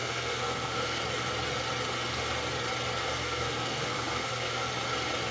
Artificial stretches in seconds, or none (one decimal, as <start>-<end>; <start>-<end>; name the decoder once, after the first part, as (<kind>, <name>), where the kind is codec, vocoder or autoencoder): 0.0-1.0 (codec, SNAC); 3.0-4.7